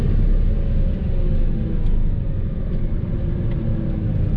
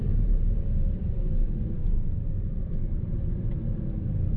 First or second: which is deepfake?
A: second